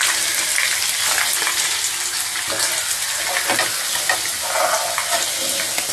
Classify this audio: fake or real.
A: real